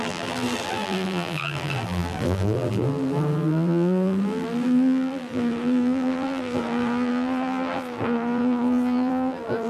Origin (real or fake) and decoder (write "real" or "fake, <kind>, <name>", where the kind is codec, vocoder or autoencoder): fake, vocoder, BigVGAN v2